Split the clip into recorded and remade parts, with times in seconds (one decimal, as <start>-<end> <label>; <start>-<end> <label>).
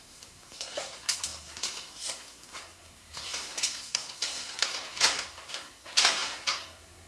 0.0-7.1 remade